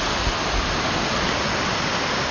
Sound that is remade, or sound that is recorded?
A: recorded